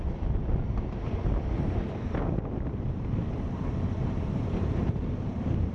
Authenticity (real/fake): real